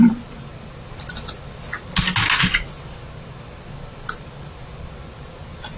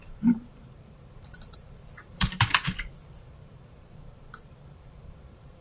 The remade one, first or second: second